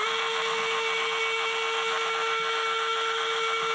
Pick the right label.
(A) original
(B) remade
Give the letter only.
A